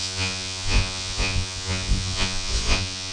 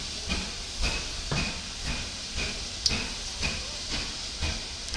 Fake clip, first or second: first